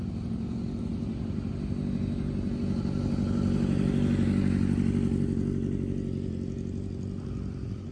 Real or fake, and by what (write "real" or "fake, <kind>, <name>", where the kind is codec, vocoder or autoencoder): real